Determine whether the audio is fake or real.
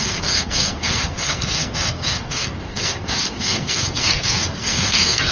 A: fake